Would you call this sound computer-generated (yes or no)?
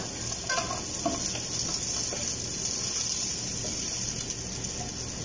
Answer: no